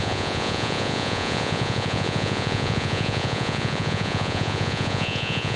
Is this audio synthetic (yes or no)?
yes